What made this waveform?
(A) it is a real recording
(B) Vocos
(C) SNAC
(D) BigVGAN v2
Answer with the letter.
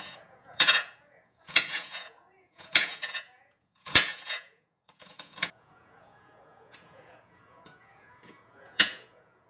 B